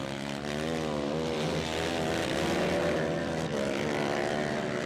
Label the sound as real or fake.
real